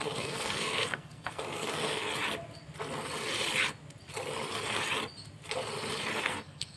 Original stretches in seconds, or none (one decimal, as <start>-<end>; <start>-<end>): 2.1-6.2